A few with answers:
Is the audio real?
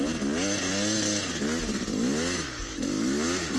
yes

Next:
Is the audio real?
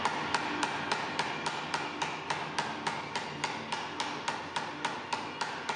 yes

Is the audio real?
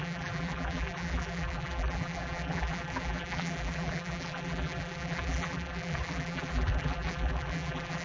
no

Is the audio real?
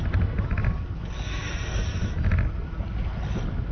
yes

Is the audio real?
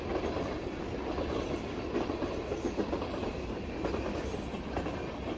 yes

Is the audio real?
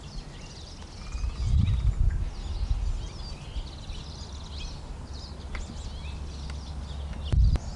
yes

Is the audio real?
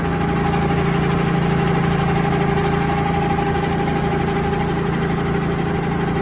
yes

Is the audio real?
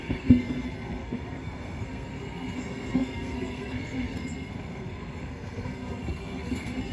no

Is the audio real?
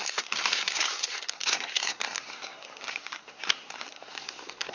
no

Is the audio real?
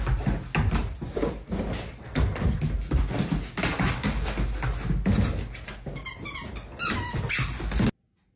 yes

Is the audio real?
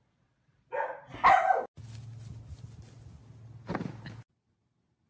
yes